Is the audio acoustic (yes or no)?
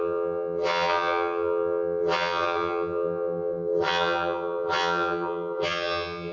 no